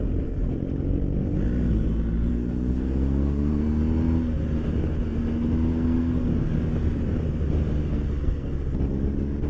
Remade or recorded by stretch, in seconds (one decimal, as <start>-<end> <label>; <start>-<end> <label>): 0.0-2.3 recorded; 2.3-3.8 remade; 3.8-5.7 recorded; 5.7-6.3 remade; 6.3-7.8 recorded; 7.8-8.5 remade; 8.5-9.5 recorded